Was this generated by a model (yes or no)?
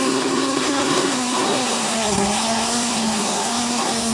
yes